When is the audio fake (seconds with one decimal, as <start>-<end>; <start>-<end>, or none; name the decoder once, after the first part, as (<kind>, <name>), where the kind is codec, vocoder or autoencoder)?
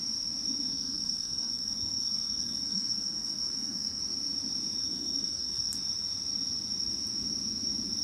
0.7-4.0 (codec, SNAC); 4.8-5.7